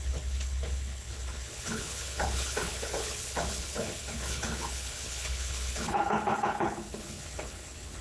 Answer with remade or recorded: remade